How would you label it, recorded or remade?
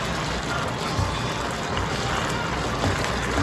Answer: recorded